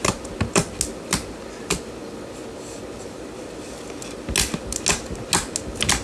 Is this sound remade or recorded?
recorded